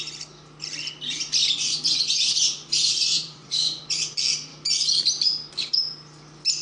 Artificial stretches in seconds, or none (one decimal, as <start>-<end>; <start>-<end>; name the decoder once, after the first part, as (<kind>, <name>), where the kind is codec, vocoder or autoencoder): 1.4-4.0 (vocoder, Vocos)